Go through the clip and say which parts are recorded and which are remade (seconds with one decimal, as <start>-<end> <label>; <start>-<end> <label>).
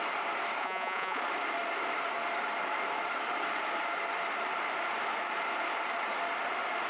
0.0-0.6 recorded; 0.6-1.2 remade; 1.2-6.9 recorded